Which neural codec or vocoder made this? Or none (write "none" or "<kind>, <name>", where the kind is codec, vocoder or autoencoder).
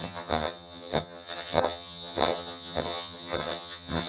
vocoder, HiFi-GAN